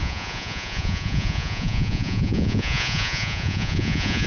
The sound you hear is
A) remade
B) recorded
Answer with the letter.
A